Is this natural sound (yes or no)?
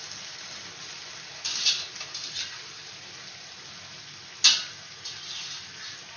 yes